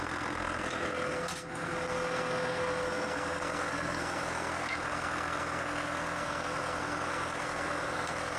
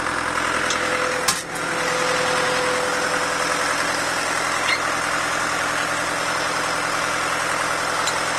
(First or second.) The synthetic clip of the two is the first